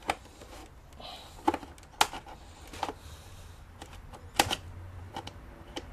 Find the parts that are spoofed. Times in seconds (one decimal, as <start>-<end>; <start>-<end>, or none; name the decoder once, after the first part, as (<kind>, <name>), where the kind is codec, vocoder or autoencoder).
0.0-0.6 (vocoder, BigVGAN v2); 2.8-5.9